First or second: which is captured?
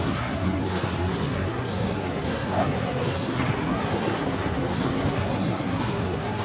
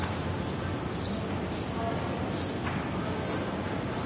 second